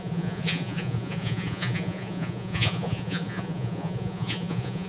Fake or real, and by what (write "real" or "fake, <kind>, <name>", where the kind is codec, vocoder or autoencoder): fake, vocoder, Vocos